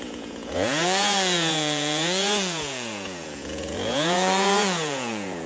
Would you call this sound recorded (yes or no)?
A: no